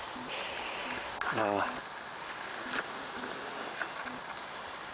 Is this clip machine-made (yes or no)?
no